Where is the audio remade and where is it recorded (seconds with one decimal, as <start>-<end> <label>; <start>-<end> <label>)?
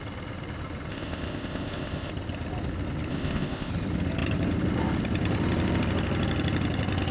0.0-0.9 recorded; 0.9-2.1 remade; 2.1-3.1 recorded; 3.1-3.7 remade; 3.7-7.1 recorded